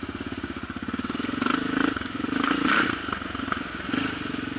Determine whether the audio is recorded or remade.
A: recorded